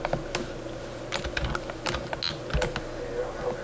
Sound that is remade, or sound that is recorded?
recorded